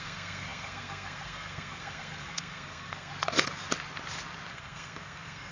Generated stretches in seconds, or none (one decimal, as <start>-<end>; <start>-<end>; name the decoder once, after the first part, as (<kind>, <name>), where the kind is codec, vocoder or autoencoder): 0.0-3.1 (codec, SNAC); 4.5-5.5